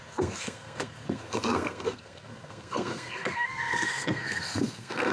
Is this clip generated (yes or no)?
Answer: yes